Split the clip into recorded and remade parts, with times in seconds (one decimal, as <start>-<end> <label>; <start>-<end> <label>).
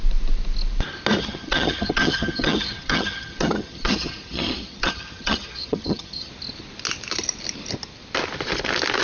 0.0-1.2 recorded; 1.2-6.3 remade; 6.3-9.0 recorded